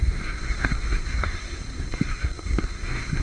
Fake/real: fake